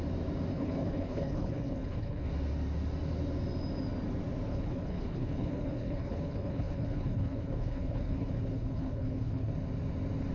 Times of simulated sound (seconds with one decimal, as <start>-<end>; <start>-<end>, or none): 0.5-2.3; 4.5-9.5